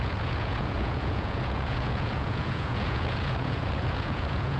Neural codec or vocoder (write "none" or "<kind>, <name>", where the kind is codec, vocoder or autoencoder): vocoder, Vocos